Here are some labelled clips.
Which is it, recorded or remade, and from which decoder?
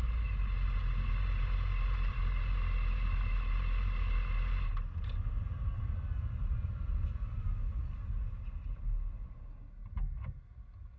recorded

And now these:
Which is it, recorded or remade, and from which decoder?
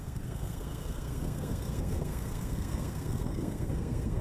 remade, codec, SNAC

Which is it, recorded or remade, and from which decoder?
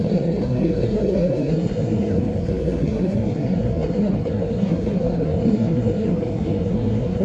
remade, codec, SNAC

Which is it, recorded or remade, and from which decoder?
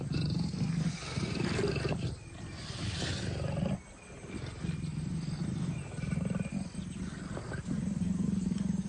recorded